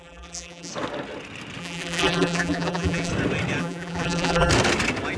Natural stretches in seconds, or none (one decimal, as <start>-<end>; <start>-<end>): 0.7-1.6; 3.1-3.6; 4.5-5.2